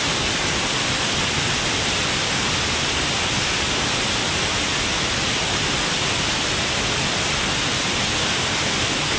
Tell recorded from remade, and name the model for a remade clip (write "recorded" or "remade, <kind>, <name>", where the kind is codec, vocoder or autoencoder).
recorded